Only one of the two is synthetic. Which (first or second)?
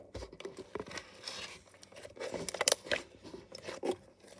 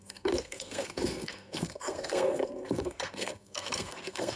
second